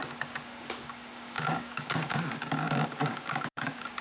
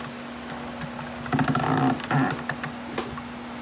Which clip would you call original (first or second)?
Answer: second